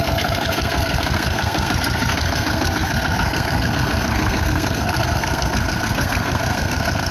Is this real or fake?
fake